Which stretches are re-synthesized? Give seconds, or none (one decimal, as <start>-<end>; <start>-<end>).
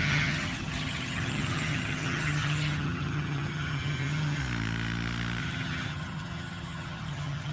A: 0.0-4.4; 5.4-7.5